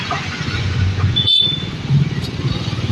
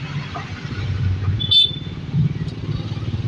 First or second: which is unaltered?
second